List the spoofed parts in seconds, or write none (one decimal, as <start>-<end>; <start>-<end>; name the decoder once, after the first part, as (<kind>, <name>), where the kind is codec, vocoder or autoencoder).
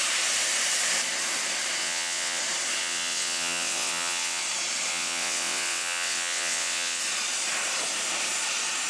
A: 1.8-2.4 (vocoder, WaveNeXt); 2.8-4.4; 4.9-7.0